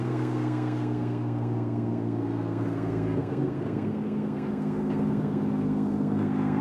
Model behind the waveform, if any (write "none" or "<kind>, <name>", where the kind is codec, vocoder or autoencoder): codec, SNAC